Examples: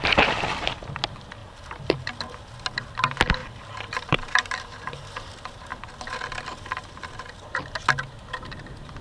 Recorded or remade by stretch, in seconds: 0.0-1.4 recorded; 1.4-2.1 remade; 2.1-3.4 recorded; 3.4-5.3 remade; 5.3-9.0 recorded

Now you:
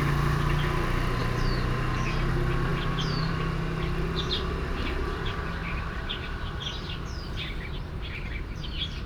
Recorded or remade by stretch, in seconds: 0.0-2.7 recorded; 2.7-3.3 remade; 3.3-5.6 recorded; 5.6-9.1 remade

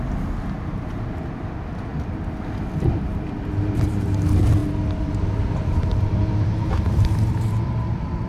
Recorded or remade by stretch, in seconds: 0.0-1.9 remade; 1.9-2.9 recorded; 2.9-4.6 remade; 4.6-5.2 recorded; 5.2-8.3 remade

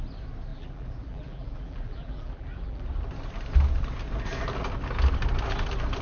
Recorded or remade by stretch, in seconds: 0.0-0.5 recorded; 0.5-2.9 remade; 2.9-6.0 recorded